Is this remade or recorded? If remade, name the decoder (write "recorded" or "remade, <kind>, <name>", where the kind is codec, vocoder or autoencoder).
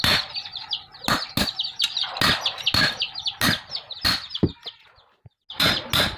recorded